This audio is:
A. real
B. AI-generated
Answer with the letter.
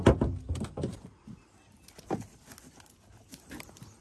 A